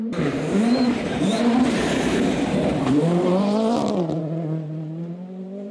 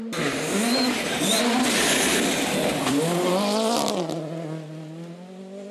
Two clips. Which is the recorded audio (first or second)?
second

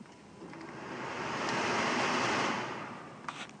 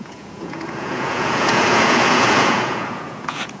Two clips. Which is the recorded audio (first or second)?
first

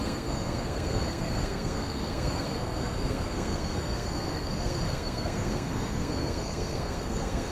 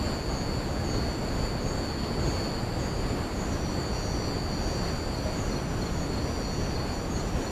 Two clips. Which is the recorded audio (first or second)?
second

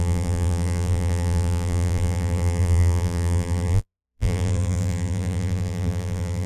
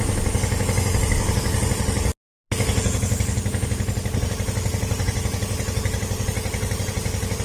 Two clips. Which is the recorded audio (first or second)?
second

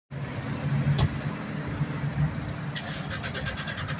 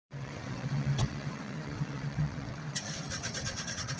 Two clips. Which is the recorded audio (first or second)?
first